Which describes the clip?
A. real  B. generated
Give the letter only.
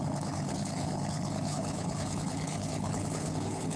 B